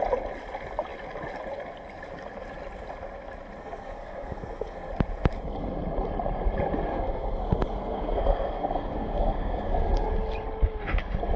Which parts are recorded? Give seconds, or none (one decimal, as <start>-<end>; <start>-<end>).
0.0-3.6; 4.9-6.9; 10.1-11.4